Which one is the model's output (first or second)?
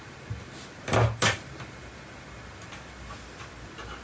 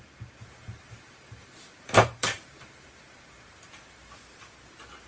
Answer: second